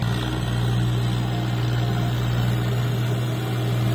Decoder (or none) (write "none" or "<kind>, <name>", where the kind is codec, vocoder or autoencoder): none